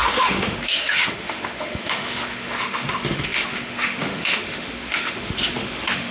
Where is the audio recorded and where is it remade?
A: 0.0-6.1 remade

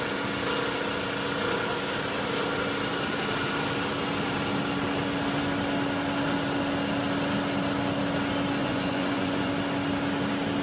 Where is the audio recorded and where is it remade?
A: 0.0-8.6 recorded; 8.6-9.5 remade; 9.5-10.6 recorded

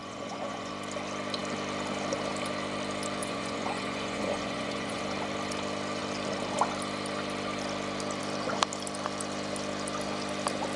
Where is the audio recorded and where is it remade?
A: 0.0-0.7 remade; 0.7-3.2 recorded; 3.2-5.0 remade; 5.0-10.8 recorded

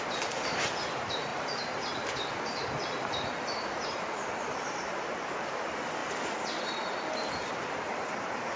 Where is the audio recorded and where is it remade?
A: 0.0-6.0 remade; 6.0-7.5 recorded; 7.5-8.6 remade

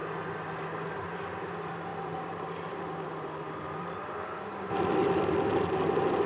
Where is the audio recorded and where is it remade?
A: 0.0-1.9 recorded; 1.9-4.0 remade; 4.0-6.3 recorded

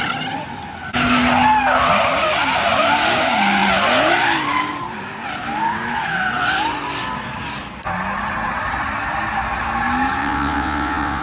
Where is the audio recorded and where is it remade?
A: 0.0-10.2 recorded; 10.2-11.2 remade

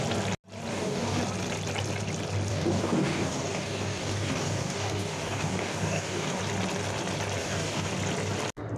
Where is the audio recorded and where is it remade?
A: 0.0-0.7 recorded; 0.7-1.2 remade; 1.2-2.5 recorded; 2.5-6.4 remade; 6.4-7.4 recorded; 7.4-7.9 remade; 7.9-8.8 recorded